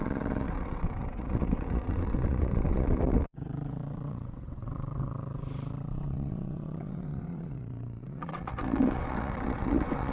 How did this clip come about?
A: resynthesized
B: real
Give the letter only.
A